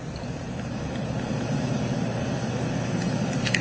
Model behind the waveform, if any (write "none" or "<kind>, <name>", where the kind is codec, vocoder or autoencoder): vocoder, BigVGAN v2